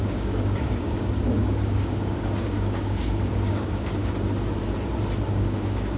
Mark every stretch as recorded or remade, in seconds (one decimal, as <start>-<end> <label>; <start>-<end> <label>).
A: 0.0-4.0 remade; 4.0-5.3 recorded; 5.3-6.0 remade